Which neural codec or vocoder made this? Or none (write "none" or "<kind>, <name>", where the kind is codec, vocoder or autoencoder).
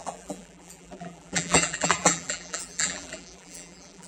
vocoder, BigVGAN v2